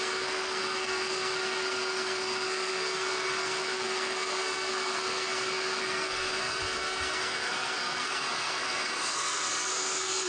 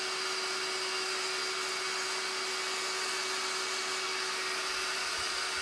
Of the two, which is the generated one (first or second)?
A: first